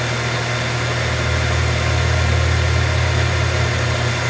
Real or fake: real